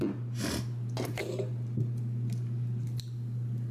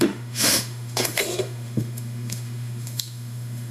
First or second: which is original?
first